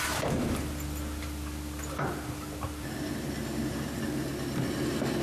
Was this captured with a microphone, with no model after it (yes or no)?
yes